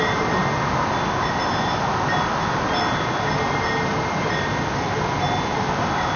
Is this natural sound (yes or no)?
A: yes